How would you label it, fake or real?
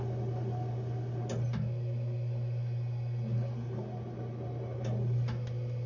real